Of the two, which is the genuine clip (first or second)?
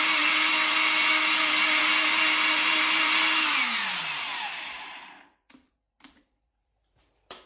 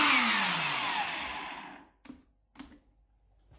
second